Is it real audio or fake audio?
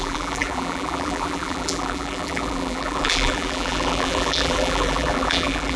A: fake